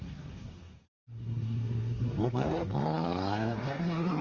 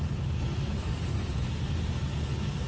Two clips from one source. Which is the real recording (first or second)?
second